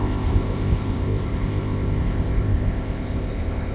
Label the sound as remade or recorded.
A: remade